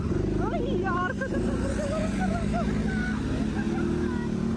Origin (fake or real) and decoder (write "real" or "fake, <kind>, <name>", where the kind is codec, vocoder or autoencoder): real